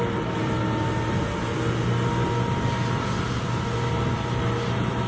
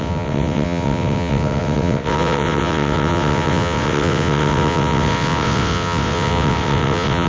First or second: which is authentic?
first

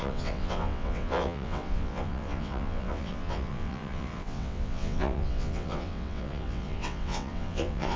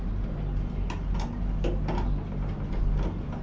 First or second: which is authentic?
second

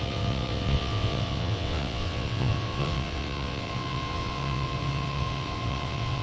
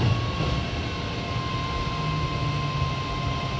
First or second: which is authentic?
second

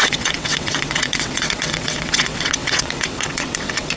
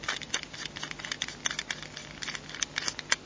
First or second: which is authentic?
second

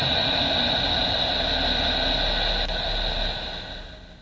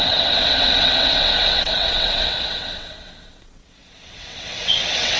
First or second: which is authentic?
first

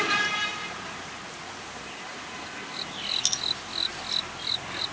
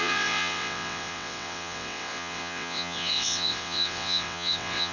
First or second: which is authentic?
first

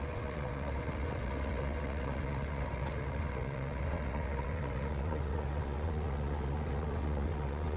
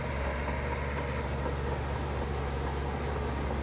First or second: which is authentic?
second